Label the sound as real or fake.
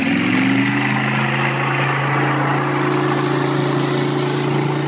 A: real